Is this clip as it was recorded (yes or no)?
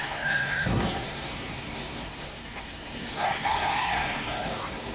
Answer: no